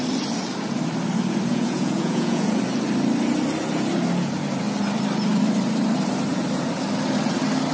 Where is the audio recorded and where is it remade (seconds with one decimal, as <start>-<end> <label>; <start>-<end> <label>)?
0.0-1.5 recorded; 1.5-2.6 remade; 2.6-7.7 recorded